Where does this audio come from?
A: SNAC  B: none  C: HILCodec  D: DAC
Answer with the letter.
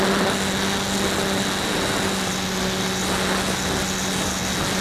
B